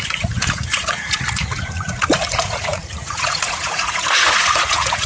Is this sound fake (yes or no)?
yes